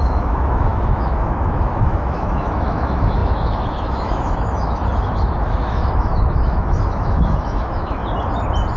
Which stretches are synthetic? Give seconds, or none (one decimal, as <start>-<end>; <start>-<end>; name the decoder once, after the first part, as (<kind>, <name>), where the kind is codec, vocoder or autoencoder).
0.0-8.0 (autoencoder, DAC-VAE)